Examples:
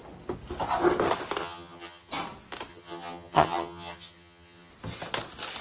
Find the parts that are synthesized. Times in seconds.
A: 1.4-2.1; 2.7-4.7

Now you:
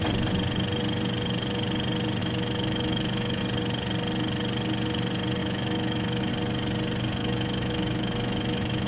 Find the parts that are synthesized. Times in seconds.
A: 2.2-3.4; 5.4-6.3; 7.2-8.9